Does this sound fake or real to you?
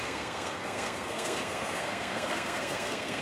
fake